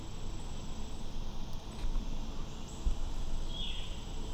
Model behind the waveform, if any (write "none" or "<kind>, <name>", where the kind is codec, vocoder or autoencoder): none